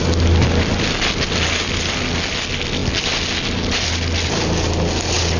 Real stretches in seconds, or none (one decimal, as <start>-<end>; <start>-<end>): 0.0-5.4